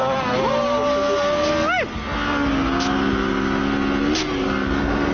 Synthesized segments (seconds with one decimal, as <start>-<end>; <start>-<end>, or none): none